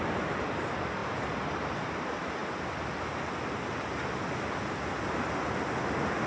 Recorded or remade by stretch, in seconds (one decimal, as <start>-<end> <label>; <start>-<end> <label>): 0.0-6.3 recorded